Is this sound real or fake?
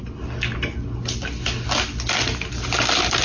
real